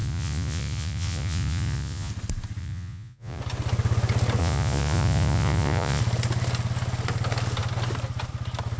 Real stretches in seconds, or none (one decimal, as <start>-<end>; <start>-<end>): 2.1-2.6; 3.4-4.4; 6.0-8.8